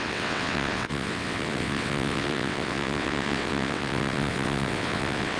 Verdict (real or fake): fake